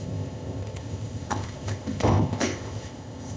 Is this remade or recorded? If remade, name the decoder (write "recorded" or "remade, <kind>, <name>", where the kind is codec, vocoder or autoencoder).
remade, codec, ZipCodec